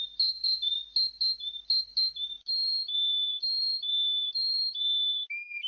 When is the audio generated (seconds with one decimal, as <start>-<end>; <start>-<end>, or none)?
1.9-4.3